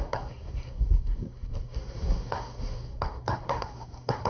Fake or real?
fake